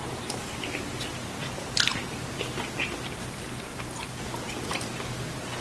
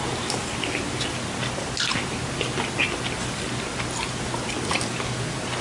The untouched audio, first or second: second